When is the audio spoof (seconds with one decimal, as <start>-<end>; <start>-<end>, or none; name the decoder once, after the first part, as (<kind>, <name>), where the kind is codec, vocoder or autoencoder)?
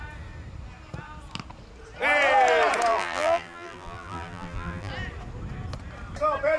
2.9-4.9 (vocoder, BigVGAN v2)